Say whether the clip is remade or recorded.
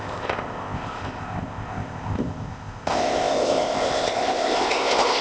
remade